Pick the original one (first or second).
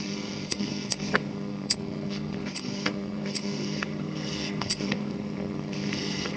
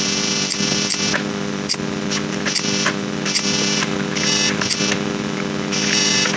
second